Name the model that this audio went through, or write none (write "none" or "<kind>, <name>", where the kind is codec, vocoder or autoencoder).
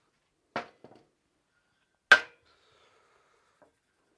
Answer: none